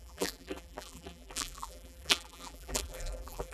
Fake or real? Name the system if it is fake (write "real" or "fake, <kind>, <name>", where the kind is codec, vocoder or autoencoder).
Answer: fake, vocoder, BigVGAN v2